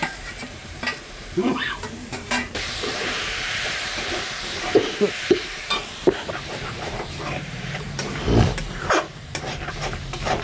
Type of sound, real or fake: fake